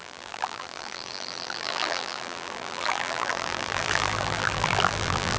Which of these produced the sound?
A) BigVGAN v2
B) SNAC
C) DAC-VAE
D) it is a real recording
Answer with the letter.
A